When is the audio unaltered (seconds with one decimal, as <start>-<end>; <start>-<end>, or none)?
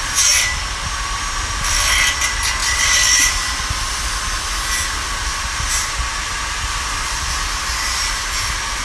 0.0-2.6; 4.0-5.3; 7.3-8.8